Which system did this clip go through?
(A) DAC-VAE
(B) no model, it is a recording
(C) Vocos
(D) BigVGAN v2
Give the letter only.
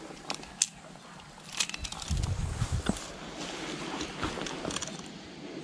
B